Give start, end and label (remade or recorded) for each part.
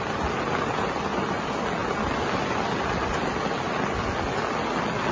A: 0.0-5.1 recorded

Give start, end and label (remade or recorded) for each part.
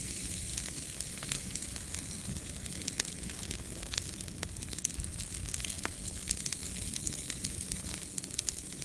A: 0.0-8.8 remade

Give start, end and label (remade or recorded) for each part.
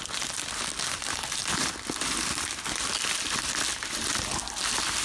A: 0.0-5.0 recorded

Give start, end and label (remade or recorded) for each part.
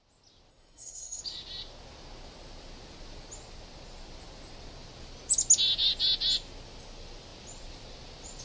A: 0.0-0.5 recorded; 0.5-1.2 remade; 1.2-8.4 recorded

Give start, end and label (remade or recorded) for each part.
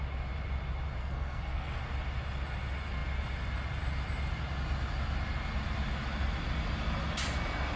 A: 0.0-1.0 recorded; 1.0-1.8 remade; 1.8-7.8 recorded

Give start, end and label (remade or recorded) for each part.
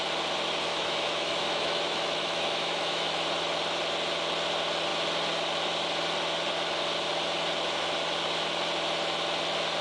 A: 0.0-0.7 recorded; 0.7-3.1 remade; 3.1-9.8 recorded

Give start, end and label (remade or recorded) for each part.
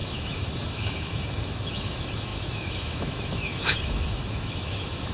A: 0.0-5.1 remade